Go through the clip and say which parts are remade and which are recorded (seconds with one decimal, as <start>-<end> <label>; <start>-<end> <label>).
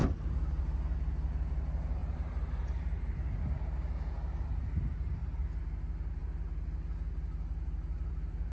0.0-2.0 recorded; 2.0-3.3 remade; 3.3-8.5 recorded